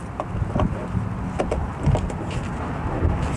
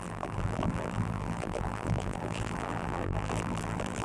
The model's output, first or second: second